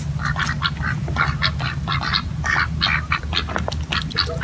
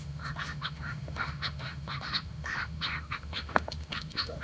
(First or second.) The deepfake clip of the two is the second